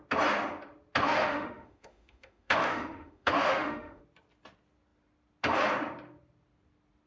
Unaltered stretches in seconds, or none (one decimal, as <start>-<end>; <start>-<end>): 0.0-1.0; 4.0-7.1